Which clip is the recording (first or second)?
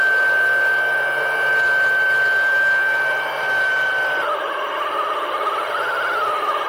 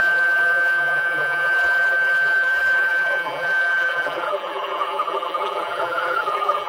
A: first